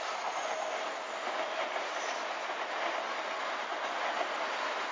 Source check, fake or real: real